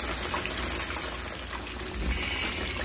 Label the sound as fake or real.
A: real